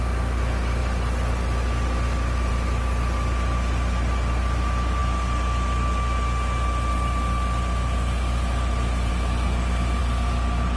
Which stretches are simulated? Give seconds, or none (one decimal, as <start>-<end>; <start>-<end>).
none